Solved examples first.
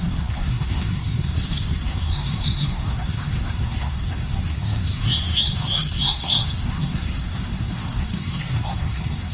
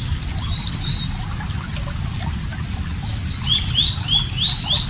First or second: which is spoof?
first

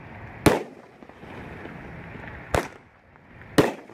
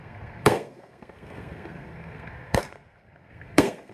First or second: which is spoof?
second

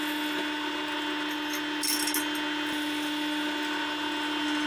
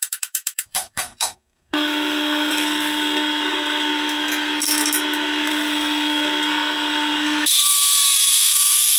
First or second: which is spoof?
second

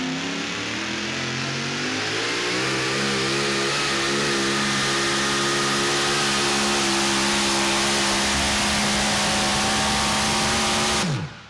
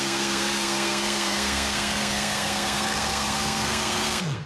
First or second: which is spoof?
second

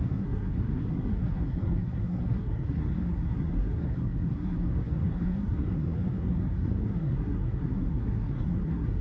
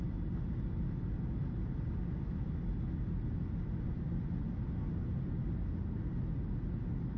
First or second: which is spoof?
first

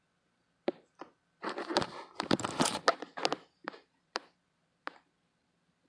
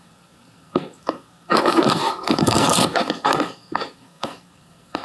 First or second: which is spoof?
second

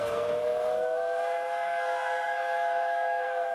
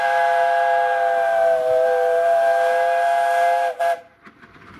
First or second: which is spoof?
first